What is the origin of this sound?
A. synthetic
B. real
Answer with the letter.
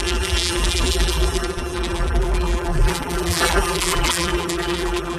A